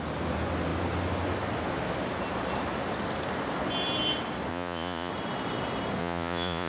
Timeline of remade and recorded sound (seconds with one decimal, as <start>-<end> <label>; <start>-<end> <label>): 0.0-4.5 recorded; 4.5-5.1 remade; 5.1-6.0 recorded; 6.0-6.7 remade